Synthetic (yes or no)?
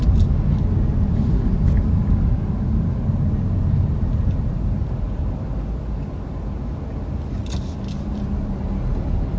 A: no